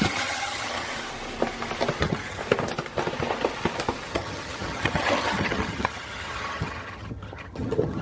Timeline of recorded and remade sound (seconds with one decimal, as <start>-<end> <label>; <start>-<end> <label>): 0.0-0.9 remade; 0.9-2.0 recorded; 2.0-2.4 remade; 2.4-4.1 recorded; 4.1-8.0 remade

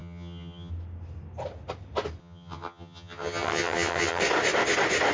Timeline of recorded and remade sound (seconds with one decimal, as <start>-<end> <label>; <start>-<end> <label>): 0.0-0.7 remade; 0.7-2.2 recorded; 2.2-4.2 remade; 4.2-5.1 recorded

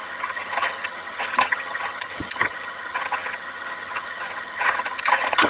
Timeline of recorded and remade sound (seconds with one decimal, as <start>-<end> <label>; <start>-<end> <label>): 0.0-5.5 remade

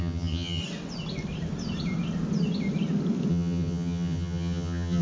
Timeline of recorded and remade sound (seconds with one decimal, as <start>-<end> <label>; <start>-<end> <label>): 0.0-0.6 remade; 0.6-3.3 recorded; 3.3-5.0 remade

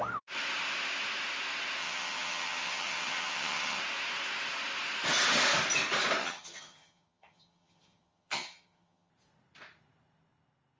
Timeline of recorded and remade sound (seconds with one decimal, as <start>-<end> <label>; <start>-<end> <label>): 0.0-1.8 recorded; 1.8-3.8 remade; 3.8-6.2 recorded; 6.2-9.1 remade; 9.1-10.8 recorded